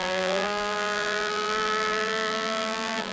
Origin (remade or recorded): remade